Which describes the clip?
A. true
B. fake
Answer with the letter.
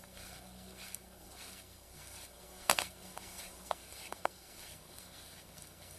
B